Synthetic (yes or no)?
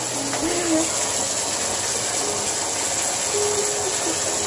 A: no